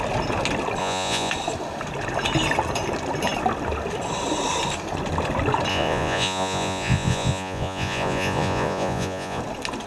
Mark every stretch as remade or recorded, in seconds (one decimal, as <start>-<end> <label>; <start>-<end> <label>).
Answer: 0.0-0.8 recorded; 0.8-1.3 remade; 1.3-5.7 recorded; 5.7-9.4 remade; 9.4-9.9 recorded